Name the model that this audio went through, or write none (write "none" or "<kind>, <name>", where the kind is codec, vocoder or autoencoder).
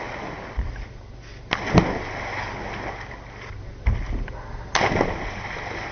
none